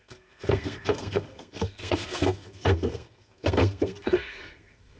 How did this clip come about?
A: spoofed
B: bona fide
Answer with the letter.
A